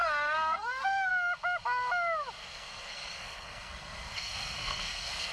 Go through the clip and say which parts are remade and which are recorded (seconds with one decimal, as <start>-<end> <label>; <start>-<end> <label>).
0.0-1.1 remade; 1.1-2.4 recorded; 2.4-5.3 remade